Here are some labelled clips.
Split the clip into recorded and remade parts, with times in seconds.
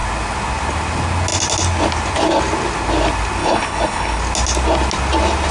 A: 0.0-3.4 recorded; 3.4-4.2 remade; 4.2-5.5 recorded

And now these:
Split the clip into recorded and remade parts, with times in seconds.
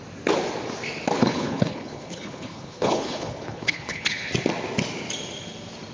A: 0.0-1.2 recorded; 1.2-4.3 remade; 4.3-5.9 recorded